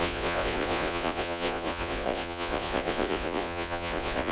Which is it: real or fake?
fake